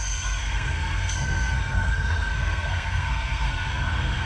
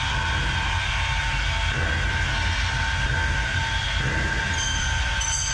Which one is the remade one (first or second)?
first